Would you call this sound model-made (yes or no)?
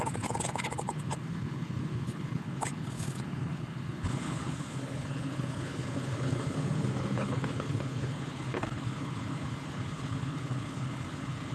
yes